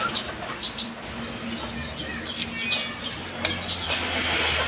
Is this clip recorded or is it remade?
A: recorded